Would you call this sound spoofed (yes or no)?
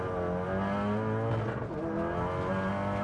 no